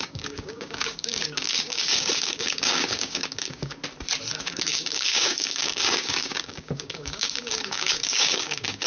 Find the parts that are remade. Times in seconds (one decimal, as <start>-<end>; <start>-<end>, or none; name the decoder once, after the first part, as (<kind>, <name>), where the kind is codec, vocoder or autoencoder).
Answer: 0.0-3.8 (codec, DAC); 4.4-8.9